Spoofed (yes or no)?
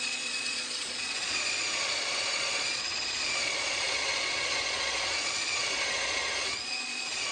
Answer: yes